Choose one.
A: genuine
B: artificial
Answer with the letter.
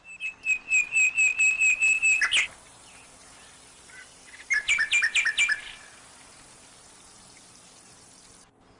A